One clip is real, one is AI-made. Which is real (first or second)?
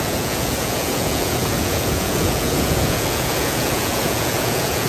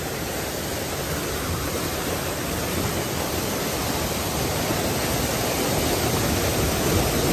second